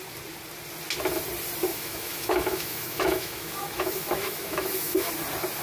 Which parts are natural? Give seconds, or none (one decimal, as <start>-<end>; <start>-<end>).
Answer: 0.0-1.7; 5.1-5.6